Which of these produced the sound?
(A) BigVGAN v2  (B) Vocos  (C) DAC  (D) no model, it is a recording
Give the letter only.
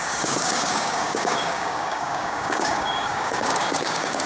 C